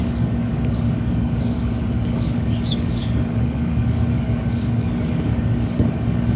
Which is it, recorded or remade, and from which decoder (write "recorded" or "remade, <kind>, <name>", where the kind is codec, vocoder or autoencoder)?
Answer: remade, codec, DAC